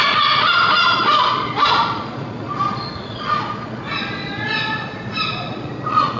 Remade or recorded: remade